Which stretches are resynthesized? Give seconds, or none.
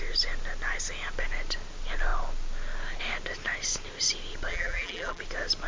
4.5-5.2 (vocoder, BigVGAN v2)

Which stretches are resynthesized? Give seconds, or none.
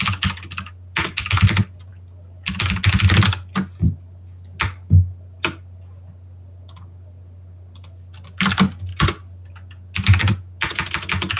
8.9-9.5 (vocoder, BigVGAN v2)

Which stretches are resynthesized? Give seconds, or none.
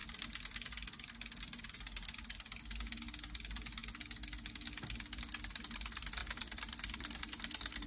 6.2-7.2 (vocoder, BigVGAN v2)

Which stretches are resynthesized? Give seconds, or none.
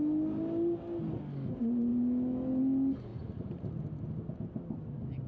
3.1-3.8 (vocoder, BigVGAN v2)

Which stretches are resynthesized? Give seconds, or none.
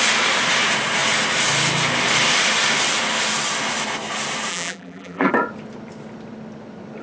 4.5-5.3 (vocoder, BigVGAN v2)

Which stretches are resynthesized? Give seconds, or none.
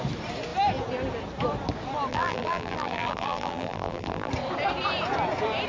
2.1-4.3 (vocoder, BigVGAN v2)